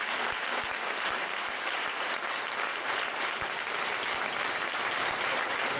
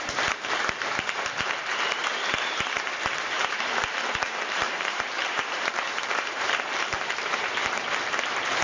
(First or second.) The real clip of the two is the first